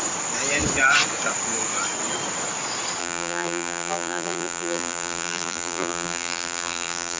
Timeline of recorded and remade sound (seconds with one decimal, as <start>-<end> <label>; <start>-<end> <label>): 0.0-3.0 recorded; 3.0-7.2 remade